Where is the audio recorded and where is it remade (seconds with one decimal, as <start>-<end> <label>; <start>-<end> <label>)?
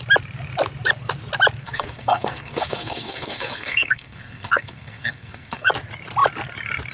0.0-1.6 recorded; 1.6-5.7 remade; 5.7-6.9 recorded